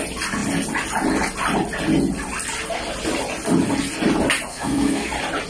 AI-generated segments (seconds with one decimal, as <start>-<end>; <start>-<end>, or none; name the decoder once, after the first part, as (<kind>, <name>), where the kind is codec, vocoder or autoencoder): 4.5-5.1 (codec, SNAC)